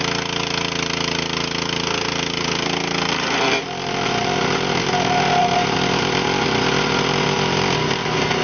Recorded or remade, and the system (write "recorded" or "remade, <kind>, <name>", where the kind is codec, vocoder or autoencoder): recorded